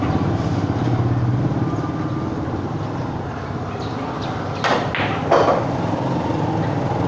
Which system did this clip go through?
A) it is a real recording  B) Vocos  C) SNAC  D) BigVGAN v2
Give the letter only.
A